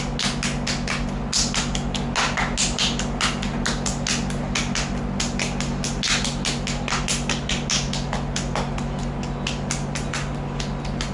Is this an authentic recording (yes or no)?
yes